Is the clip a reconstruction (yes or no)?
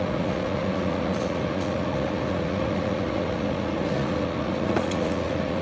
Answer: yes